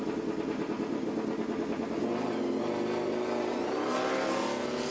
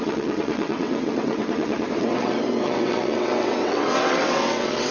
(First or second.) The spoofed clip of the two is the second